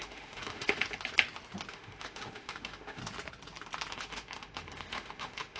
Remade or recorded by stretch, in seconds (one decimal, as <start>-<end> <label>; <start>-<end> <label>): 0.0-0.8 remade; 0.8-1.7 recorded; 1.7-3.0 remade; 3.0-3.9 recorded; 3.9-5.6 remade